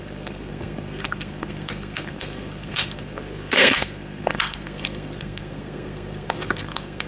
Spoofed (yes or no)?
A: yes